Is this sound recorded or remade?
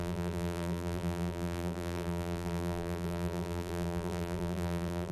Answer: remade